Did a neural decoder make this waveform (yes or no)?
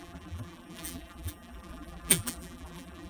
yes